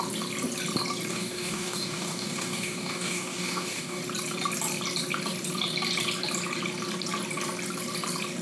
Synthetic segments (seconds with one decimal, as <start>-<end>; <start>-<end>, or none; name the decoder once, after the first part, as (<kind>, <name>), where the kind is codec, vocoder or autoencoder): 1.1-4.0 (codec, DAC)